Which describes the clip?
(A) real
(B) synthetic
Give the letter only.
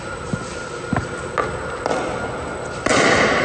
A